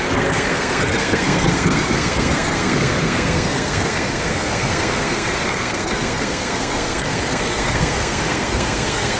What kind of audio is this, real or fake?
fake